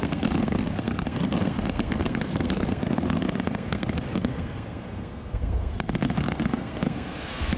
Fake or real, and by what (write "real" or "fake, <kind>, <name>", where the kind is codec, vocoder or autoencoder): fake, codec, SNAC